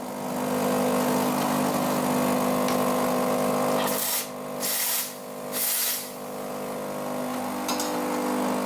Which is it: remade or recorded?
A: recorded